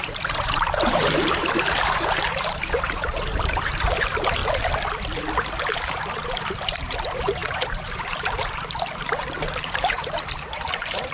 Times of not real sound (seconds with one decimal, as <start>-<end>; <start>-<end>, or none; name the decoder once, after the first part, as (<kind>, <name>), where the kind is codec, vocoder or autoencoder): 0.0-4.4 (vocoder, BigVGAN v2); 5.6-11.1